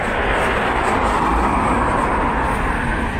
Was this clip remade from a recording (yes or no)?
no